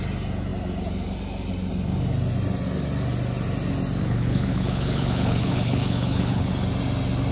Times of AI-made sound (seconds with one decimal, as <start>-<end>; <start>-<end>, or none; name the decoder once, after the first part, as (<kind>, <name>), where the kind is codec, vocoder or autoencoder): 4.0-6.5 (codec, HILCodec)

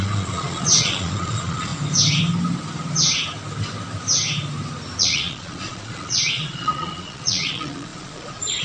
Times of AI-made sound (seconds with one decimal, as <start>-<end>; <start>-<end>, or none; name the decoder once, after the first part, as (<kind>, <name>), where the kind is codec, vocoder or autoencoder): 0.0-1.7 (vocoder, Vocos); 5.0-8.6

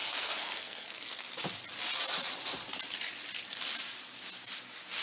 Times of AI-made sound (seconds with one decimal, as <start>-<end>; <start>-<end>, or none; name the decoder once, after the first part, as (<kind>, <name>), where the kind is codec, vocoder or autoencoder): 0.0-1.3 (codec, SNAC)

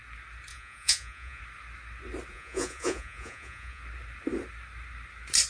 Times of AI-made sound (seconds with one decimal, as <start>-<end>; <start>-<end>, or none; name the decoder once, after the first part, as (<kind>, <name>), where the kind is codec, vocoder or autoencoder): 0.5-1.4 (vocoder, Vocos); 2.3-3.8

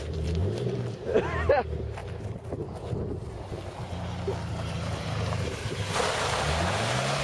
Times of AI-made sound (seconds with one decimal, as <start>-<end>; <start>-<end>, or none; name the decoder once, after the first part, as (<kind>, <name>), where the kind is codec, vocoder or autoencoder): 0.0-2.0 (vocoder, BigVGAN v2); 4.5-5.6

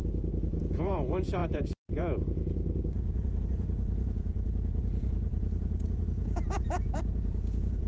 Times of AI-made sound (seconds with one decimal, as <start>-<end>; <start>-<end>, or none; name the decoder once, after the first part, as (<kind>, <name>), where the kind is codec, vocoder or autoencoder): 0.0-7.9 (vocoder, Vocos)

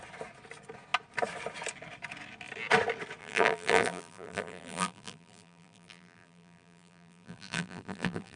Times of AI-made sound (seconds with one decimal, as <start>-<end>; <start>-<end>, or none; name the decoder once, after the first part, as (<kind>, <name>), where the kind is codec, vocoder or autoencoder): 3.2-8.4 (vocoder, BigVGAN v2)

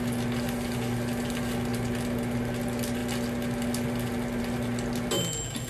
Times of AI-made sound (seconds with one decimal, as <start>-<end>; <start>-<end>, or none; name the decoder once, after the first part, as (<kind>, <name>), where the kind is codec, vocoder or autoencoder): none